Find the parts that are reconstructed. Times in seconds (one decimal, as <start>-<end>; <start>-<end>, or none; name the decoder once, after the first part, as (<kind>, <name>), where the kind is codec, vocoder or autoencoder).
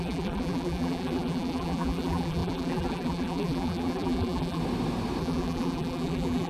0.0-4.6 (vocoder, BigVGAN v2); 5.2-6.5